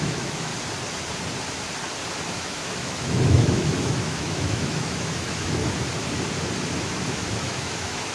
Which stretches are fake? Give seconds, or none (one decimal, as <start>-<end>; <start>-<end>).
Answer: 0.0-0.5; 2.3-5.6; 6.7-8.1